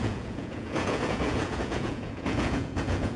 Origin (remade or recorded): remade